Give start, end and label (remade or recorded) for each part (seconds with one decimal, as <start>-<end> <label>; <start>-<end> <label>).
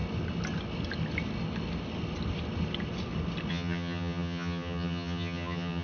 0.0-3.5 recorded; 3.5-5.8 remade